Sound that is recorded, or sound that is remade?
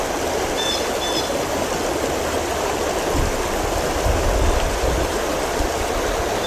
recorded